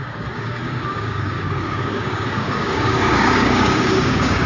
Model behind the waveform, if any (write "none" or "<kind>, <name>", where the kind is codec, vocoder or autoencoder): codec, DAC